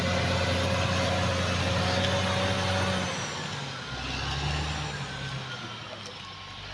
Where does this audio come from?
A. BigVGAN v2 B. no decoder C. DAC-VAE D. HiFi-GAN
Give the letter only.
B